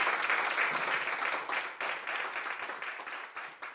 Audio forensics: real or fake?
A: real